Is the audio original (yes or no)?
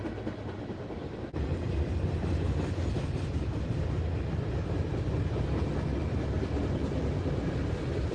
yes